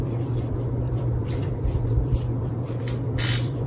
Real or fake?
fake